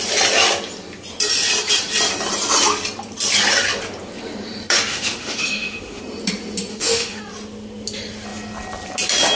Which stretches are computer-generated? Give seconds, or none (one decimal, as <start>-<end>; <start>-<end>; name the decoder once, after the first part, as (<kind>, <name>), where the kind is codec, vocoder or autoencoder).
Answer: 4.9-6.0 (autoencoder, DAC-VAE); 6.7-7.2